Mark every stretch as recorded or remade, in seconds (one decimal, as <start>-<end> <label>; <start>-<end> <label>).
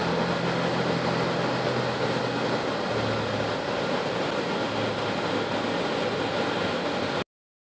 0.0-7.7 recorded